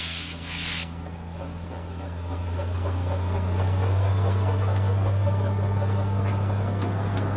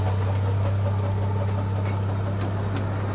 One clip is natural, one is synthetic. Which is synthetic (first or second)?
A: first